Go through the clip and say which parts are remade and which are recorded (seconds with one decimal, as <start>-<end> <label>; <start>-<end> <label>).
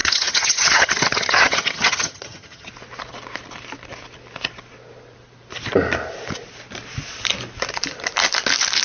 0.0-2.7 remade; 2.7-8.8 recorded